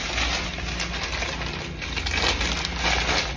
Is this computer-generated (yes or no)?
no